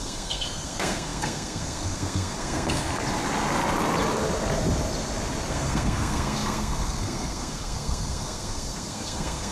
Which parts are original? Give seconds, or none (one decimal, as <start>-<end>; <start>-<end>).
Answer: 2.9-5.5